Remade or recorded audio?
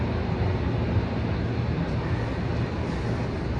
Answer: recorded